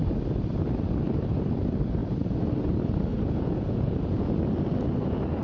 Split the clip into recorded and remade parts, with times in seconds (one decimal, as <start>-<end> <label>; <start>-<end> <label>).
0.0-3.1 recorded; 3.1-4.5 remade; 4.5-5.4 recorded